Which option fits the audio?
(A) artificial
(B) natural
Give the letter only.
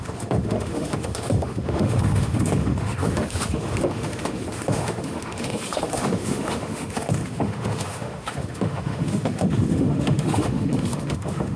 A